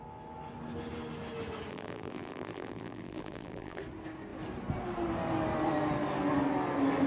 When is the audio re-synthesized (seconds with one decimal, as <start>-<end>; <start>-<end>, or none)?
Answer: 1.7-3.8